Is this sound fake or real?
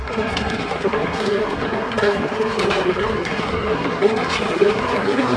fake